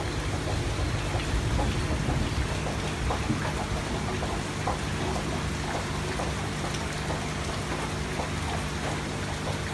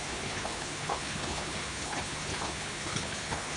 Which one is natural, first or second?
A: first